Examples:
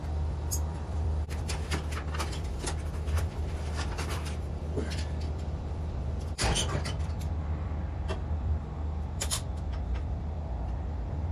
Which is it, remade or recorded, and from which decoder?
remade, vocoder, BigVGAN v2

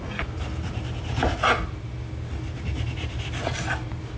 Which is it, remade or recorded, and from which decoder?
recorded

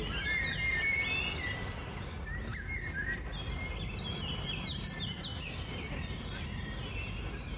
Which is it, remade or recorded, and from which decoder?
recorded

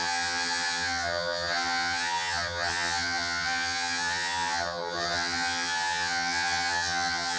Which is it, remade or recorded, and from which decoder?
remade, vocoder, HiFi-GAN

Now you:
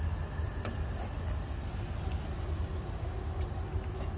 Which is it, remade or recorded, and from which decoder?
recorded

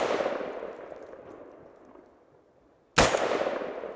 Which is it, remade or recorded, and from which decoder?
recorded